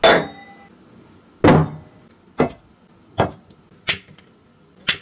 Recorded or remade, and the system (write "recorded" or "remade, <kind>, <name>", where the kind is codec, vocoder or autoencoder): recorded